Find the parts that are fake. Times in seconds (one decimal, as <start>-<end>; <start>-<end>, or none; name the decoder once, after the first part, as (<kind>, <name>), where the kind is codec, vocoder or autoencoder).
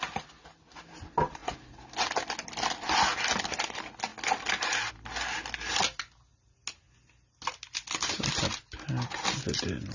none